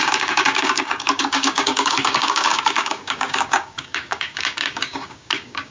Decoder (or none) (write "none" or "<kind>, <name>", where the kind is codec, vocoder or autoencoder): codec, DAC